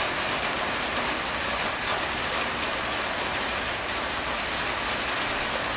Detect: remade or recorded recorded